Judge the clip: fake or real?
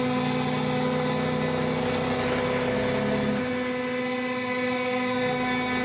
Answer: real